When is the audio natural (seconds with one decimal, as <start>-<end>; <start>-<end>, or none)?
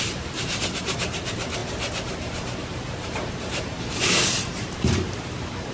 none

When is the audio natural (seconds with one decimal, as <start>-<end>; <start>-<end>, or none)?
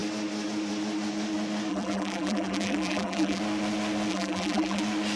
0.0-1.7; 3.4-4.1; 4.8-5.2